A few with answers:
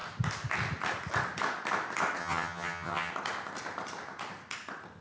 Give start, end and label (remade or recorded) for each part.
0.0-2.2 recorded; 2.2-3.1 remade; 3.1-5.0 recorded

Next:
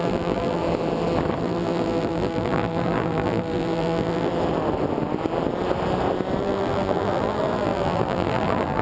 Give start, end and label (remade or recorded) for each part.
0.0-0.6 remade; 0.6-1.4 recorded; 1.4-4.3 remade; 4.3-6.4 recorded; 6.4-8.8 remade

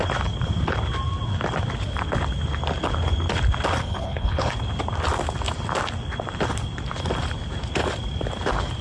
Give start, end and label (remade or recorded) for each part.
0.0-3.8 recorded; 3.8-4.5 remade; 4.5-8.8 recorded